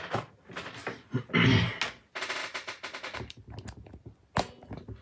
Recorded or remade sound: recorded